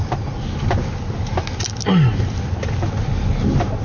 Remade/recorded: recorded